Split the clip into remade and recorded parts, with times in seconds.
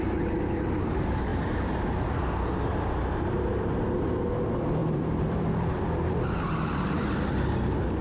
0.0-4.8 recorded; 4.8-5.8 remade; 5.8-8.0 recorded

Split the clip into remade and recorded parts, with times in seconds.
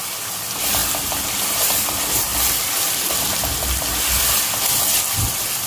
0.0-5.7 recorded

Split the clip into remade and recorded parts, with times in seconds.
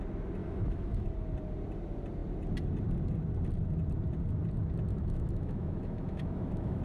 0.0-0.4 recorded; 0.4-1.1 remade; 1.1-4.9 recorded; 4.9-6.8 remade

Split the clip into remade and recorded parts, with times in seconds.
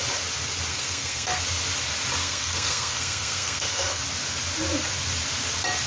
0.0-0.7 recorded; 0.7-1.4 remade; 1.4-2.2 recorded; 2.2-4.0 remade; 4.0-5.9 recorded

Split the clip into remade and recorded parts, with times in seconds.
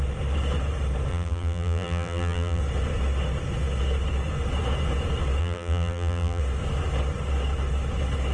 0.0-1.1 recorded; 1.1-2.6 remade; 2.6-5.4 recorded; 5.4-6.4 remade; 6.4-8.3 recorded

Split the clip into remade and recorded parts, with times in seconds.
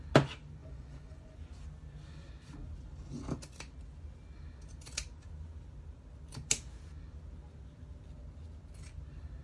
0.0-0.6 recorded; 0.6-1.4 remade; 1.4-9.4 recorded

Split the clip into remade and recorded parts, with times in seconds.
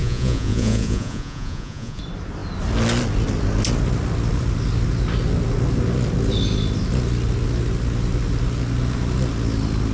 0.0-2.0 remade; 2.0-9.9 recorded